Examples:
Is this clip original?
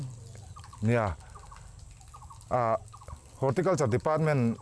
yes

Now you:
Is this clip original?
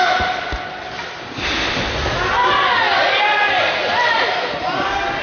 yes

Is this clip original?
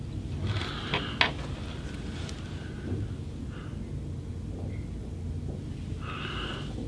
yes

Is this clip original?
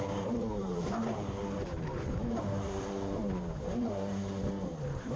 no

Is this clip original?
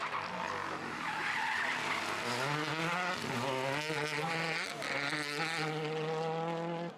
yes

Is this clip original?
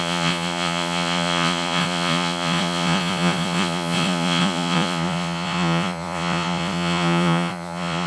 no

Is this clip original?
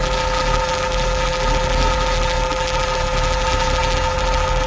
no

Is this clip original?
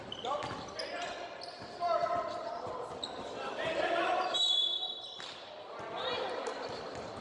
yes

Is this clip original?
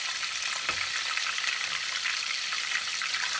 yes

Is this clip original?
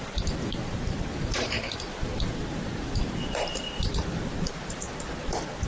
yes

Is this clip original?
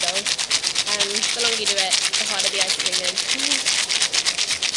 yes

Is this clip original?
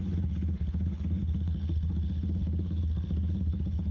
no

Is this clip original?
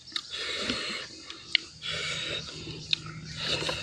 yes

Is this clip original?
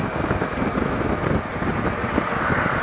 yes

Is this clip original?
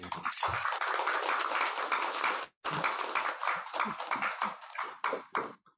yes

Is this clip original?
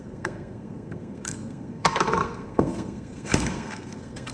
no